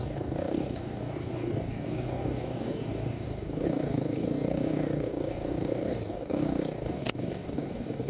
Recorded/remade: remade